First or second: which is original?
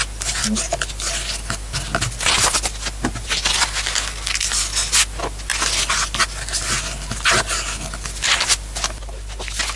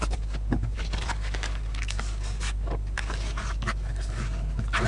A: first